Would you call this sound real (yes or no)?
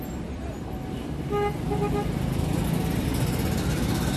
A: yes